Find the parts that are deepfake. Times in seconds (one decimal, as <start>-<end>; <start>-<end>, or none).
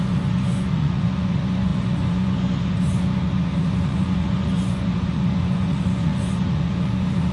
0.0-7.3